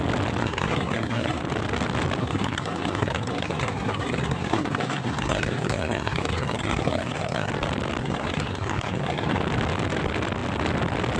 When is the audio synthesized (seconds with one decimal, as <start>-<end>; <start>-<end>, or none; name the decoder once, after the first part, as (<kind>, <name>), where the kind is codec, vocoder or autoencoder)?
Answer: 0.4-1.4 (codec, SNAC); 2.2-7.5; 8.0-9.4